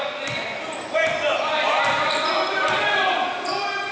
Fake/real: real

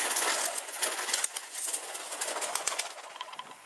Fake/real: fake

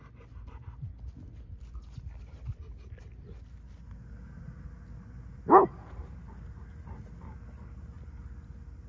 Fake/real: real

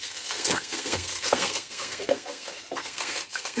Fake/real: fake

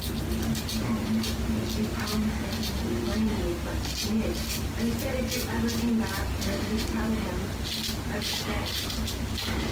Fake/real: real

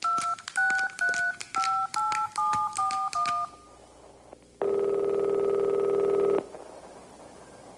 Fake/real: real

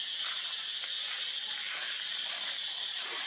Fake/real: real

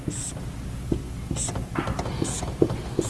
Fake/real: real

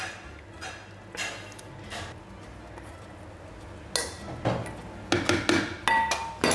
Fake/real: real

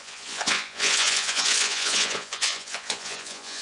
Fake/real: fake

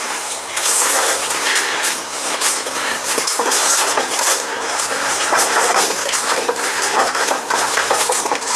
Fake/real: fake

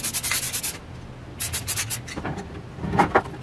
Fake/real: real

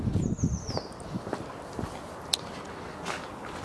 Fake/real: real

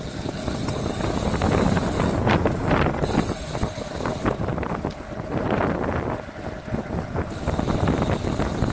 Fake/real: real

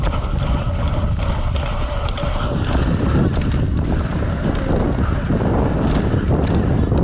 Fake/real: real